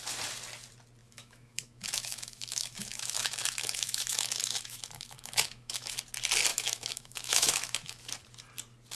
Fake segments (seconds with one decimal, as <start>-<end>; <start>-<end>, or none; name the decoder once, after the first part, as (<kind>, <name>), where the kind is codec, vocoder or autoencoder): 1.0-6.0 (autoencoder, DAC-VAE); 6.5-8.0